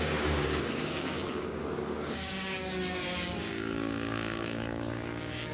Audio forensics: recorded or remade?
remade